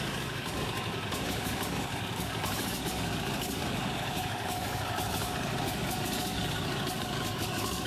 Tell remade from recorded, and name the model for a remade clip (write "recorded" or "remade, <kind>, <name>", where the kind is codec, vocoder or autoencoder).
remade, codec, DAC